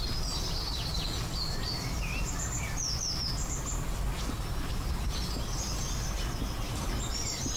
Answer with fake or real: real